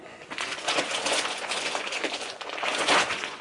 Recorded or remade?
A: remade